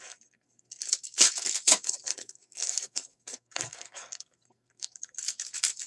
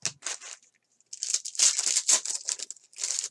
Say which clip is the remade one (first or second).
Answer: first